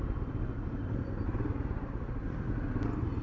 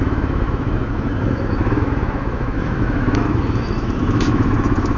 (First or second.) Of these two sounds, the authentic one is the first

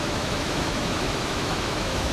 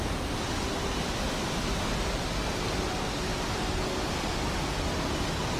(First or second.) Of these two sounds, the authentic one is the second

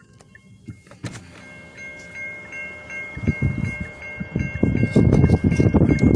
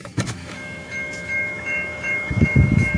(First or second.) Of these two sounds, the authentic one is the first